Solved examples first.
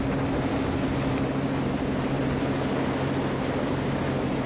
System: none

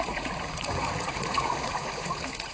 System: vocoder, Vocos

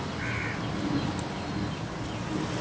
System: none